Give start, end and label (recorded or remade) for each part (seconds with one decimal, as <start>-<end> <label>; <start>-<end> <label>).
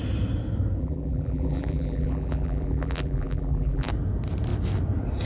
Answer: 0.0-0.8 recorded; 0.8-3.9 remade; 3.9-5.2 recorded